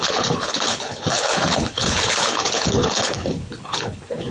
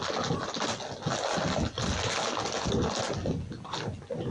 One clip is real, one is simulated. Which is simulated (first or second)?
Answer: first